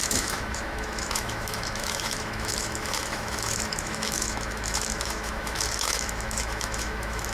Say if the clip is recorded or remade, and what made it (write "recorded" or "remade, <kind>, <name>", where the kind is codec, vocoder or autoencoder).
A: remade, autoencoder, DAC-VAE